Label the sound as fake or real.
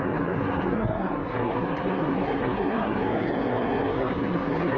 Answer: fake